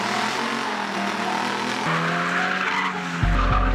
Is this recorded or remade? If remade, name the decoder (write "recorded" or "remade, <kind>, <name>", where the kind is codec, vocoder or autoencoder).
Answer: recorded